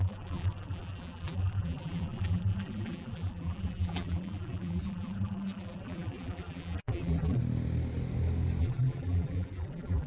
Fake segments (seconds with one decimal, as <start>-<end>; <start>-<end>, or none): 0.0-7.4; 8.6-10.1